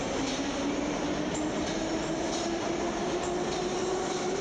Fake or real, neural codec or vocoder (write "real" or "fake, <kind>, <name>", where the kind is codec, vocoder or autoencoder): real